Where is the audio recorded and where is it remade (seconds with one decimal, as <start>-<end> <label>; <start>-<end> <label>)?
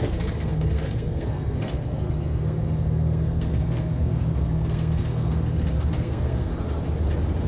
0.0-6.5 remade; 6.5-7.5 recorded